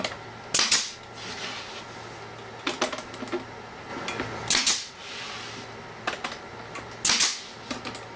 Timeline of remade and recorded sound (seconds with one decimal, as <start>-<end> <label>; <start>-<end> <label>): 0.0-8.2 recorded